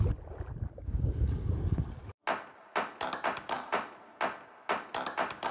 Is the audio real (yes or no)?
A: yes